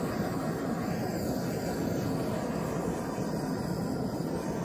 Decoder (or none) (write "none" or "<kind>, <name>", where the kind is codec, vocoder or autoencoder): none